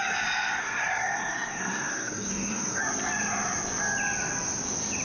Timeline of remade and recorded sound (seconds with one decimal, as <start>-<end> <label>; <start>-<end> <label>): 0.0-0.6 recorded; 0.6-2.8 remade; 2.8-5.0 recorded